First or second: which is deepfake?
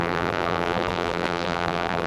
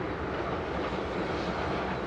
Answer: first